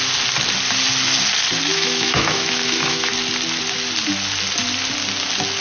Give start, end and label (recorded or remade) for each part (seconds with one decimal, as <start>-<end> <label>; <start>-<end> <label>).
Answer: 0.0-1.7 recorded; 1.7-3.1 remade; 3.1-5.6 recorded